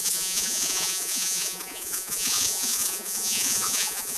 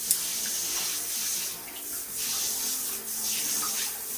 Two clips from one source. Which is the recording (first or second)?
second